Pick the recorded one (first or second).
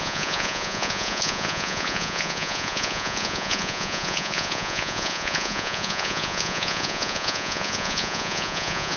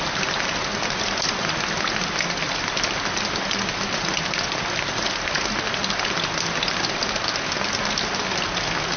second